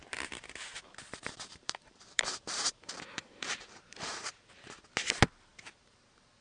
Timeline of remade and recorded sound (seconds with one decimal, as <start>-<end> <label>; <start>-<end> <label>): 0.0-0.7 recorded; 0.7-4.5 remade; 4.5-5.5 recorded; 5.5-6.0 remade; 6.0-6.4 recorded